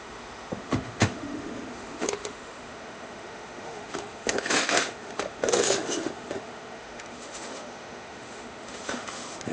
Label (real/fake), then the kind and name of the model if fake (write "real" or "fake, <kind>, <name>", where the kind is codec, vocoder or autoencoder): fake, autoencoder, DAC-VAE